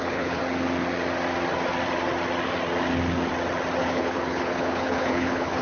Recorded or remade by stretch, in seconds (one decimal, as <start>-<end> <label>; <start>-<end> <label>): 0.0-0.4 remade; 0.4-3.8 recorded; 3.8-5.6 remade